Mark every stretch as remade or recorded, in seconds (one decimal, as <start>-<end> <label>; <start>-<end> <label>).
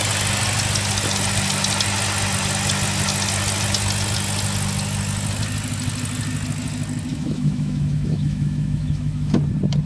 0.0-7.1 recorded; 7.1-9.4 remade; 9.4-9.9 recorded